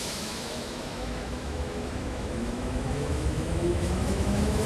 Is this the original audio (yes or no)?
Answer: no